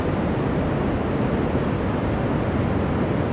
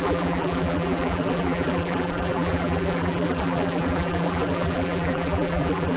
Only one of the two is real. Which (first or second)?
first